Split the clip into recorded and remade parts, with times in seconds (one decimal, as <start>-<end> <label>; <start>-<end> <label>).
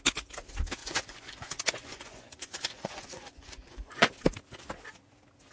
0.0-0.8 recorded; 0.8-4.1 remade; 4.1-5.5 recorded